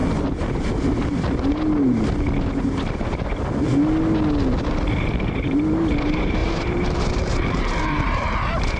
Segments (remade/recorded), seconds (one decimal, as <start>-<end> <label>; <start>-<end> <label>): 0.0-5.0 recorded; 5.0-8.8 remade

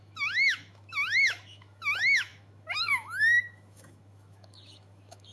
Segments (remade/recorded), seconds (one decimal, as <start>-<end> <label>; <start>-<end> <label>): 0.0-5.3 remade